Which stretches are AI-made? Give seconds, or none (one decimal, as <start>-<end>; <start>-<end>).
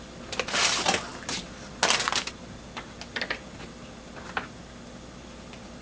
none